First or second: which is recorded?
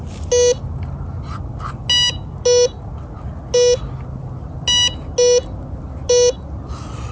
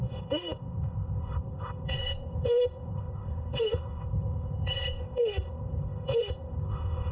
first